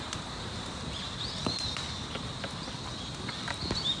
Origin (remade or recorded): recorded